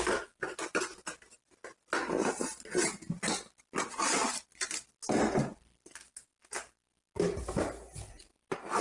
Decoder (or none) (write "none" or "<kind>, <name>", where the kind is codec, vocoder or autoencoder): none